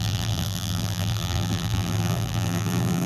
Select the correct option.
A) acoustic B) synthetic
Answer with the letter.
B